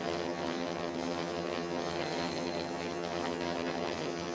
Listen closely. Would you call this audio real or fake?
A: fake